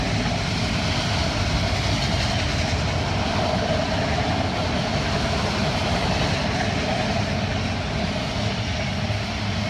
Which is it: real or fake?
real